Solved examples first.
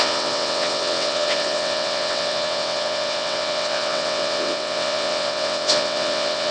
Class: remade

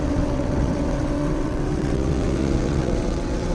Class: remade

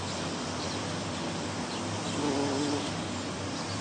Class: recorded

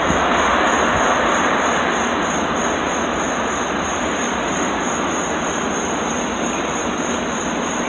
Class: recorded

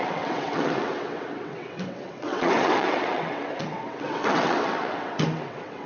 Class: remade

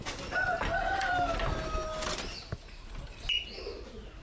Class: recorded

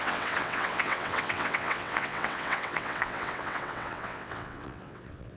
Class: remade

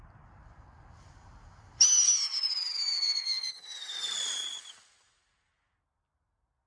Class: recorded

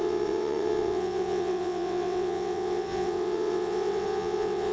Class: remade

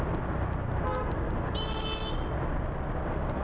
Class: recorded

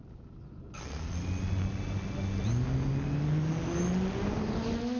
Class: recorded